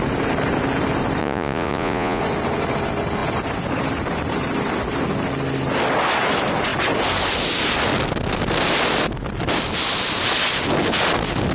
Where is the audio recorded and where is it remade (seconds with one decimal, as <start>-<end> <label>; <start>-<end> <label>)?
0.0-1.2 recorded; 1.2-2.2 remade; 2.2-11.5 recorded